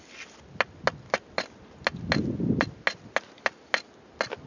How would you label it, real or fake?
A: real